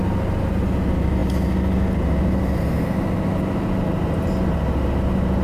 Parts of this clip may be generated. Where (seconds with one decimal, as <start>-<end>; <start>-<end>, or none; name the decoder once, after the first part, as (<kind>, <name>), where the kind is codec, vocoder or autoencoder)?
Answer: none